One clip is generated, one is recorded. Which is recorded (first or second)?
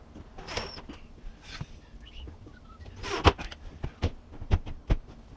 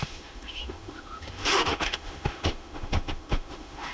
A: first